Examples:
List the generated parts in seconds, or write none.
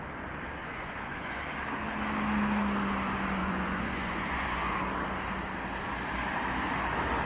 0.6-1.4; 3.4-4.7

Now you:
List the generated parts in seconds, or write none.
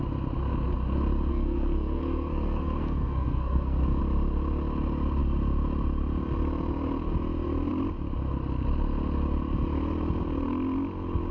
1.3-4.0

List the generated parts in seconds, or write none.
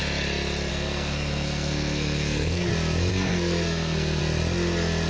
0.7-2.7; 3.1-4.2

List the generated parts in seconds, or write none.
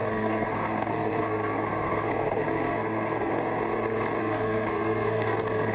0.0-3.3; 4.2-5.7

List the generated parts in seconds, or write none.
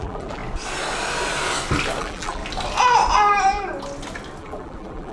0.0-0.4; 2.0-2.4; 4.4-5.1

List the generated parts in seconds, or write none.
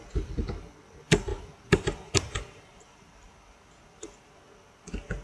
1.3-4.4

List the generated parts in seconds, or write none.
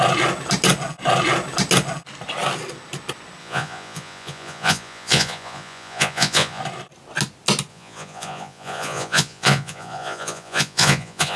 3.4-6.6; 7.7-11.4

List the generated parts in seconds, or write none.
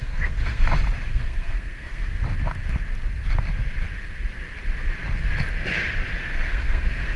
0.0-0.6; 1.1-2.0; 6.2-7.2